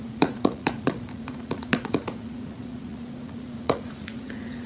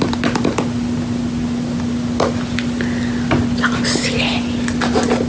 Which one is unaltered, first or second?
second